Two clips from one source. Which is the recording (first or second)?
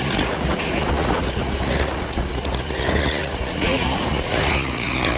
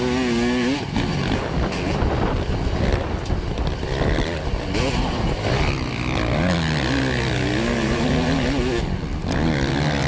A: second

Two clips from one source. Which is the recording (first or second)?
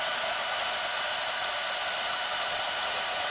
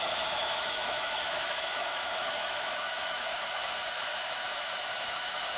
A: first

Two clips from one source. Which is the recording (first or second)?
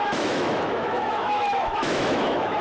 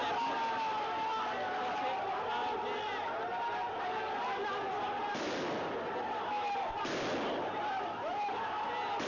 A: second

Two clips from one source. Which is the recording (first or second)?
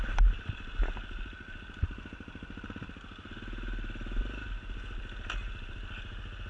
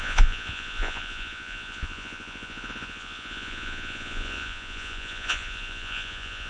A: first